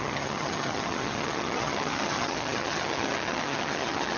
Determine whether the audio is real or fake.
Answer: fake